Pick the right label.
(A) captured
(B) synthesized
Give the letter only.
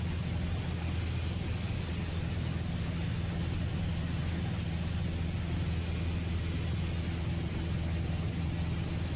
A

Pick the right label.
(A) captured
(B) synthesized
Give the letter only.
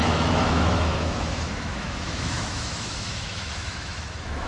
B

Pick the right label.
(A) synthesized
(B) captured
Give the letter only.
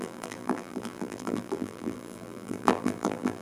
A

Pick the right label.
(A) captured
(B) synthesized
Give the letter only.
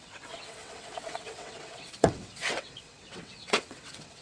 B